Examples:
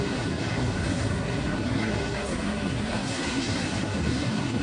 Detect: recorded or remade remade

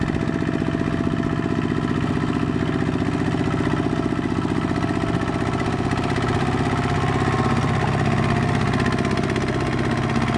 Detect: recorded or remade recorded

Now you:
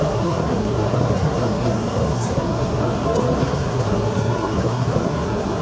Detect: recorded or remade remade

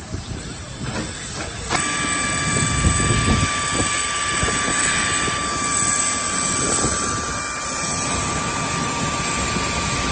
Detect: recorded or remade recorded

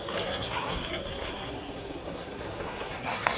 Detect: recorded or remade remade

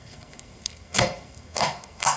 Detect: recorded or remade remade